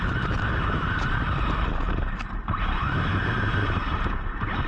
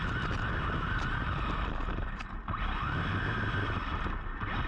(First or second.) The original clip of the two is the second